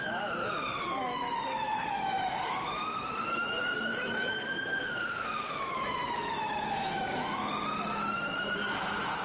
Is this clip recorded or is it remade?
remade